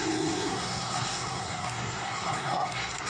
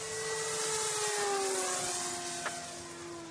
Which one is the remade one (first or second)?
first